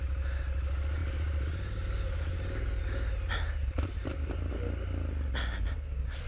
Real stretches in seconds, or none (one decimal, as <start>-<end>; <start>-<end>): 0.0-1.0; 2.8-3.6; 4.1-6.3